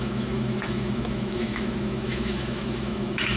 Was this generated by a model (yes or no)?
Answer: yes